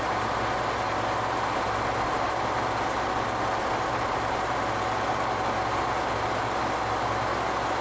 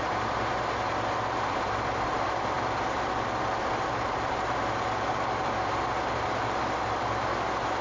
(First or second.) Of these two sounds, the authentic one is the first